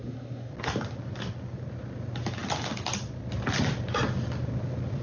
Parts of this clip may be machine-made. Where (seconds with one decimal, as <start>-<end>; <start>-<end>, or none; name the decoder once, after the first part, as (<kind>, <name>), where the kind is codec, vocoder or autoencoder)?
0.0-0.5 (codec, SNAC)